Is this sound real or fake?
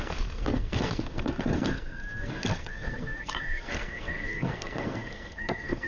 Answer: fake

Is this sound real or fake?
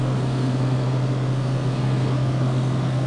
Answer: fake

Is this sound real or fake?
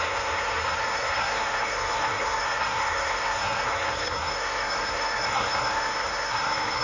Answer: fake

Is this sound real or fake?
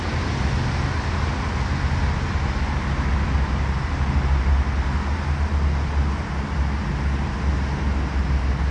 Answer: real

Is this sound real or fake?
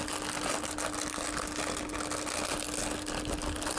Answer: real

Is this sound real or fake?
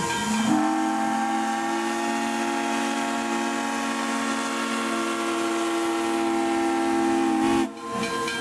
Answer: real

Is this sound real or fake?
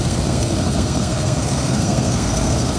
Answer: fake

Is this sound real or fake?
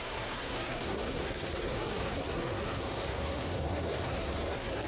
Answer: fake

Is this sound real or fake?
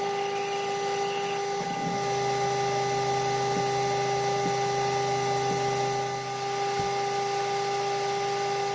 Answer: real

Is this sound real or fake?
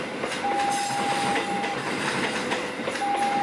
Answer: real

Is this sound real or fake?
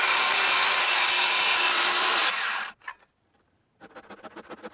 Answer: real